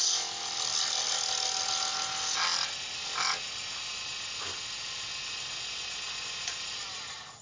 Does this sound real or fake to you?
real